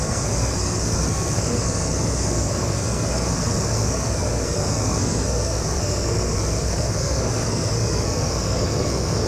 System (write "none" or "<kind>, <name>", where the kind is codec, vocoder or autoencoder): codec, SNAC